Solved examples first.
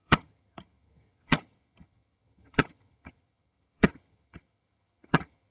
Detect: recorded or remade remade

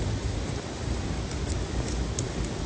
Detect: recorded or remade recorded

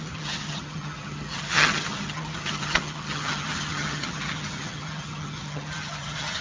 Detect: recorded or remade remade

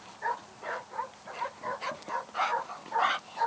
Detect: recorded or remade recorded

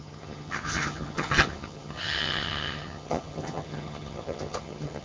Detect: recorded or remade remade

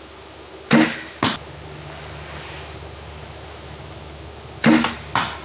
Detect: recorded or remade recorded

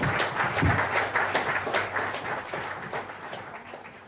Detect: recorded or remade recorded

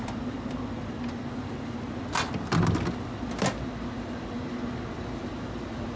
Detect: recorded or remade recorded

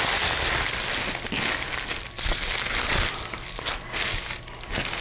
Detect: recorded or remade recorded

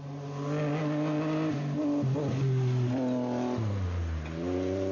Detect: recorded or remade recorded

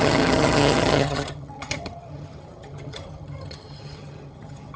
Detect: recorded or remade remade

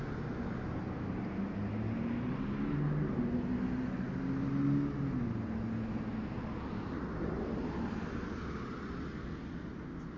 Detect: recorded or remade recorded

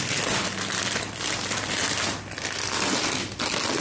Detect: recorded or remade recorded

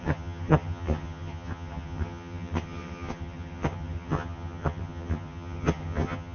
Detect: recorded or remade remade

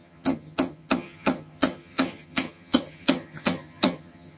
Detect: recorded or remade remade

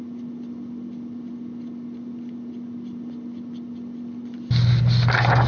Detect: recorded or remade recorded